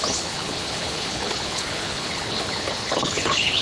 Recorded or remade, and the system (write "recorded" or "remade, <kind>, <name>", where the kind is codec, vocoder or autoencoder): remade, codec, HILCodec